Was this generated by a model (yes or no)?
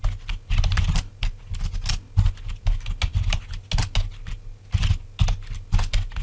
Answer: no